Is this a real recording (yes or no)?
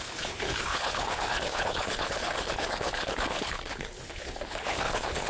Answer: no